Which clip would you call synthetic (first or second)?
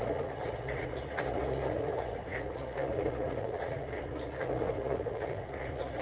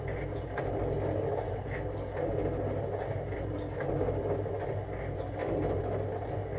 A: first